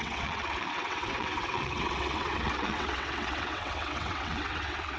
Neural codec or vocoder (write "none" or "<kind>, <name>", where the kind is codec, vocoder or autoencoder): vocoder, WaveNeXt